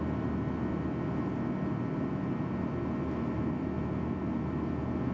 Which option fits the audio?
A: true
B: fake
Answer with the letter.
A